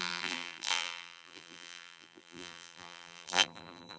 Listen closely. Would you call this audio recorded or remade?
remade